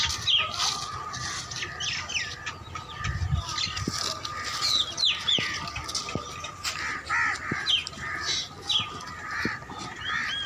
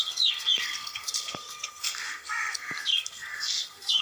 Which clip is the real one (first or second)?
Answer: first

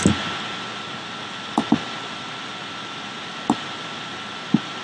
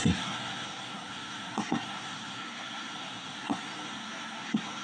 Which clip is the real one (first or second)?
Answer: first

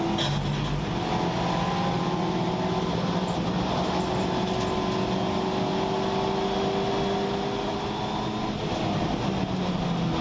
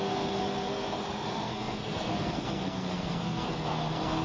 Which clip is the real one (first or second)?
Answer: first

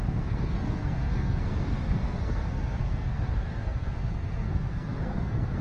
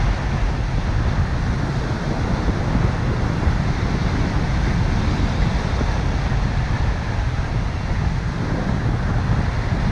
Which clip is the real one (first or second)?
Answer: second